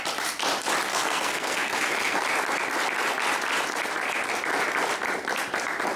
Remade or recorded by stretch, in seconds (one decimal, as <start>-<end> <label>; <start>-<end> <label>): 0.0-0.9 recorded; 0.9-2.2 remade; 2.2-6.0 recorded